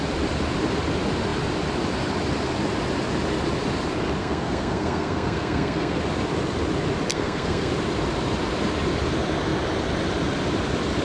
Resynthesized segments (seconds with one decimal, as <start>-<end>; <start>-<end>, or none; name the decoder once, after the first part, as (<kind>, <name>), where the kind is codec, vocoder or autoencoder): 4.2-6.0 (codec, SNAC); 7.1-7.7